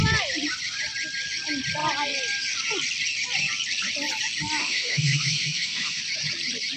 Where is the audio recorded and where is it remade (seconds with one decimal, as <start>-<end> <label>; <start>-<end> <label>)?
0.0-4.6 recorded; 4.6-6.0 remade; 6.0-6.8 recorded